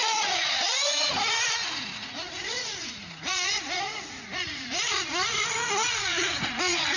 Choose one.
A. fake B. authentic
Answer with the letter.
A